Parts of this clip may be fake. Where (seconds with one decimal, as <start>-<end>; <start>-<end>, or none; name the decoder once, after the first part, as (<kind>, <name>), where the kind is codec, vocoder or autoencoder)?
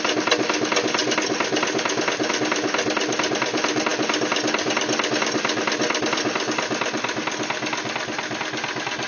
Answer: none